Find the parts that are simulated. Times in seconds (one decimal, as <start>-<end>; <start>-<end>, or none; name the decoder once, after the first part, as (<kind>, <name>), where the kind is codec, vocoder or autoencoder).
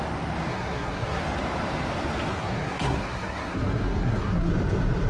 0.5-1.2 (codec, SNAC); 2.3-4.5